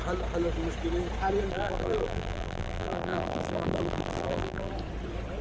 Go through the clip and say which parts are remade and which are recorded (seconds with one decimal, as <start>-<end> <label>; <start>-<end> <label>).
0.0-1.5 recorded; 1.5-4.7 remade; 4.7-5.4 recorded